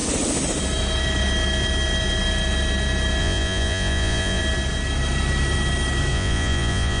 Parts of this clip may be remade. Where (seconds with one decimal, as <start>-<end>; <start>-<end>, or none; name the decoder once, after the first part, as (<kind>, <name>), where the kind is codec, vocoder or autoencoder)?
3.2-4.4 (vocoder, Vocos); 6.1-7.0